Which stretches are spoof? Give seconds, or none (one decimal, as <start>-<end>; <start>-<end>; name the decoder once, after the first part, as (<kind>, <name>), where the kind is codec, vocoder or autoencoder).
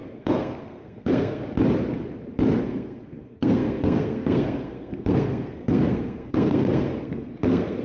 0.0-1.4 (codec, SNAC); 2.6-7.8